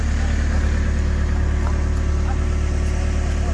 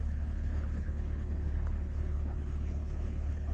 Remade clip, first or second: second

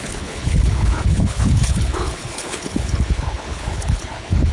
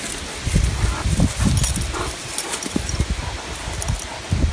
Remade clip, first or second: first